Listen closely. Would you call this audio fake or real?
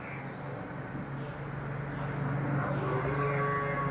real